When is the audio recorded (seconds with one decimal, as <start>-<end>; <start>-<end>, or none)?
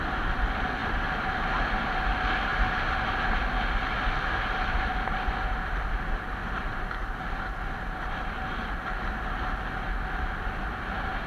0.0-11.3